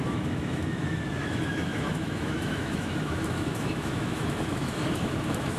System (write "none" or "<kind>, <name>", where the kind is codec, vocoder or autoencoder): autoencoder, DAC-VAE